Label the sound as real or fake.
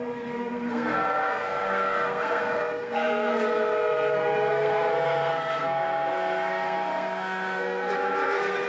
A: fake